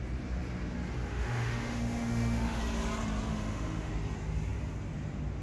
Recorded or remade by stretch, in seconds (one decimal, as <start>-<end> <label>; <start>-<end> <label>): 0.0-1.1 recorded; 1.1-2.6 remade; 2.6-3.3 recorded; 3.3-3.9 remade; 3.9-5.4 recorded